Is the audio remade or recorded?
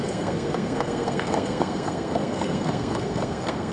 remade